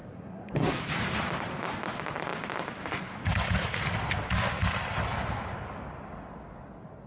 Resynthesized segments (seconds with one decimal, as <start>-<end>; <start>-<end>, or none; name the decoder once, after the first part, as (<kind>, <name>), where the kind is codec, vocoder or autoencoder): 0.0-0.8 (codec, SNAC)